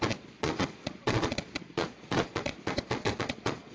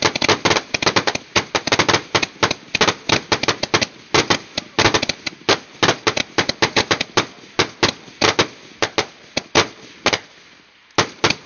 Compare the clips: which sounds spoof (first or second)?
first